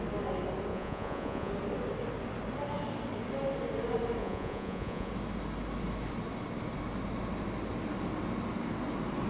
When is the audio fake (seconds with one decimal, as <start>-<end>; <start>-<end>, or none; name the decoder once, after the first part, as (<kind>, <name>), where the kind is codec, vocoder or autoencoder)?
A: 0.7-1.5 (vocoder, Vocos); 4.2-5.1